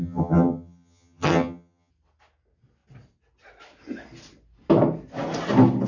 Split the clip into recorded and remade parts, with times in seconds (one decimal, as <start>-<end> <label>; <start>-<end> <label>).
0.0-1.9 remade; 1.9-5.9 recorded